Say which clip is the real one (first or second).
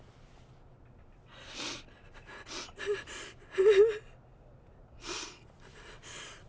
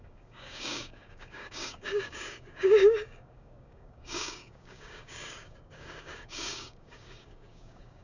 first